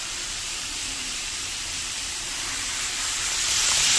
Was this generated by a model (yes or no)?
yes